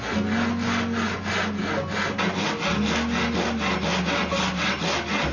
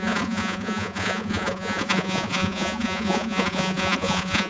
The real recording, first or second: first